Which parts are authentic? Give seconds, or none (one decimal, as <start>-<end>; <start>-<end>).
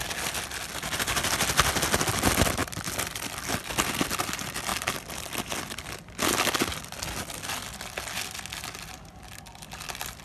0.0-2.6; 3.7-4.7; 5.4-10.2